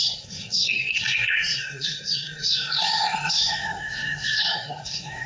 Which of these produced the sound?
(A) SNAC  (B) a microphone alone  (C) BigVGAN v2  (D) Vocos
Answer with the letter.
A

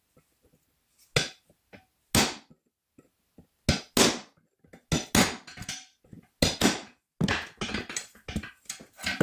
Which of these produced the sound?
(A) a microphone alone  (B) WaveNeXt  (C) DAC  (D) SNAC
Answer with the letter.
A